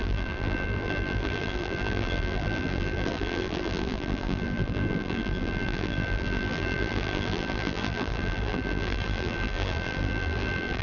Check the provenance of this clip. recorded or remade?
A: remade